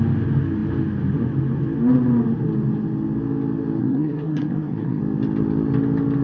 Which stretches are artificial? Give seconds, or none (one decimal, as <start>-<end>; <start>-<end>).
3.8-5.0